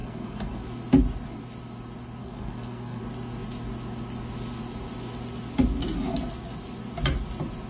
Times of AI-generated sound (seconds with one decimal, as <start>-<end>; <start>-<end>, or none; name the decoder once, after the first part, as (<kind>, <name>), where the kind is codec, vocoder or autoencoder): 0.0-0.6 (codec, SNAC); 2.2-3.0